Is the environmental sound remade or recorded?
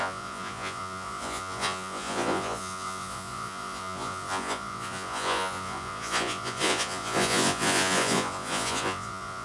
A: remade